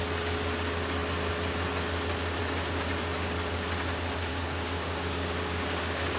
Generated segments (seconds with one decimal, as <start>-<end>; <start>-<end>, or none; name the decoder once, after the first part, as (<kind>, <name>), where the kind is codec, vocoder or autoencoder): 4.3-6.2 (codec, DAC)